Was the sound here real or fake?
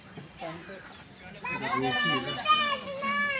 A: real